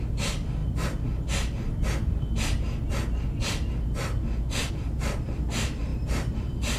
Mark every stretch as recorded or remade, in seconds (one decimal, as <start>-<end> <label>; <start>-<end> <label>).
0.0-0.6 remade; 0.6-4.7 recorded; 4.7-6.8 remade

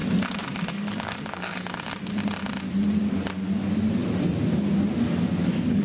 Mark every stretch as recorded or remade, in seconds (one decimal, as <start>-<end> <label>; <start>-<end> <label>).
0.0-0.7 recorded; 0.7-1.5 remade; 1.5-5.0 recorded; 5.0-5.8 remade

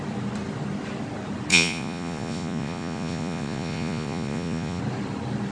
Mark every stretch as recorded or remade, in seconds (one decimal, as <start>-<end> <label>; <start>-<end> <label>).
0.0-1.5 recorded; 1.5-4.8 remade; 4.8-5.5 recorded

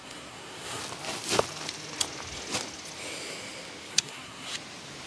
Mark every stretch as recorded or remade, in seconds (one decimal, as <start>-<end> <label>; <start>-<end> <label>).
0.0-0.8 remade; 0.8-3.9 recorded; 3.9-4.5 remade; 4.5-5.1 recorded

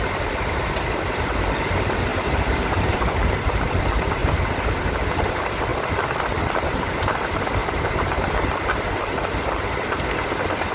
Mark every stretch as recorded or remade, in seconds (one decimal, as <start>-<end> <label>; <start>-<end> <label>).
0.0-2.1 recorded; 2.1-3.0 remade; 3.0-7.6 recorded; 7.6-8.3 remade; 8.3-10.7 recorded

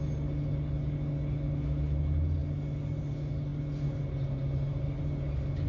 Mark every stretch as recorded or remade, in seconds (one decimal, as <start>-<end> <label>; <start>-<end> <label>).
0.0-5.7 recorded